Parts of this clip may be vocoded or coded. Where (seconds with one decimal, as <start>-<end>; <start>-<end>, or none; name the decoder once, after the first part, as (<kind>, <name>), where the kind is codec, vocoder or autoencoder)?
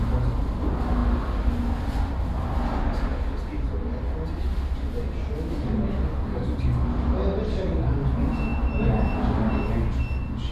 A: none